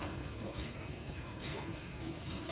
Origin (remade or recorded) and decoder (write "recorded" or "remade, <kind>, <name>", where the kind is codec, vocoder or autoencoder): remade, codec, SNAC